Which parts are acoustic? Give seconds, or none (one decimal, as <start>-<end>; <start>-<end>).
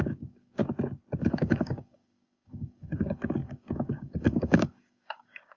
0.6-1.3